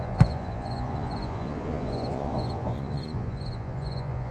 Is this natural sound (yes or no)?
no